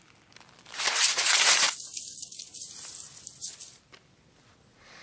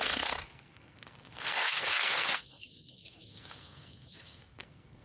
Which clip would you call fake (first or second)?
second